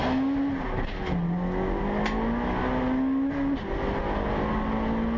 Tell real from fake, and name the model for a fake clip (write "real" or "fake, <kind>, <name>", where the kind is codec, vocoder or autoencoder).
real